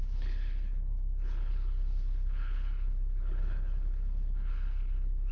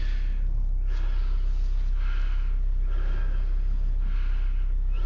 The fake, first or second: first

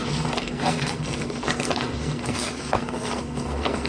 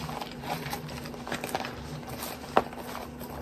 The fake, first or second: first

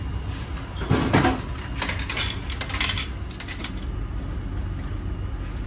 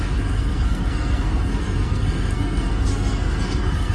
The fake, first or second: second